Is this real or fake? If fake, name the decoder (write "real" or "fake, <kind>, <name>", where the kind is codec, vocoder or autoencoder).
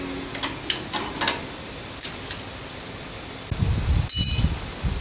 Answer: real